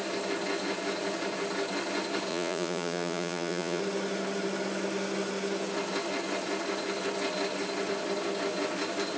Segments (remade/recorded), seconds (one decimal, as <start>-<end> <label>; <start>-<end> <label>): 0.0-2.3 recorded; 2.3-3.8 remade; 3.8-9.2 recorded